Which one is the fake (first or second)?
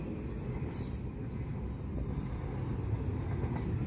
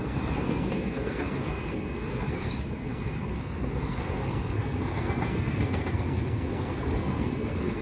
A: second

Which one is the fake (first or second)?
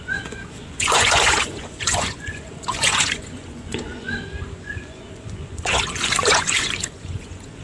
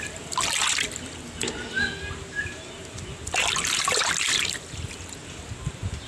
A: first